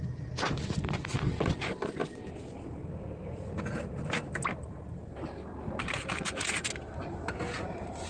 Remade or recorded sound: recorded